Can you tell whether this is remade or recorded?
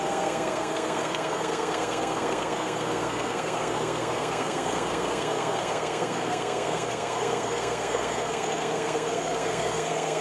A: remade